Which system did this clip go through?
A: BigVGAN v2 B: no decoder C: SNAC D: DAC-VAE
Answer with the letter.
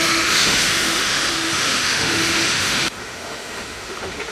D